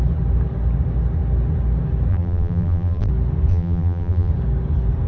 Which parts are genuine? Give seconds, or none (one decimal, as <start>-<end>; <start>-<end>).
0.0-2.1; 3.1-3.5; 4.3-5.1